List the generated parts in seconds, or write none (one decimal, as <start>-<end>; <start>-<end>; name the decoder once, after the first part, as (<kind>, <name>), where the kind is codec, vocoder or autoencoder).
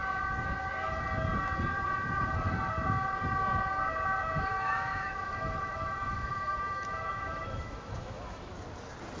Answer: 4.5-8.5 (autoencoder, DAC-VAE)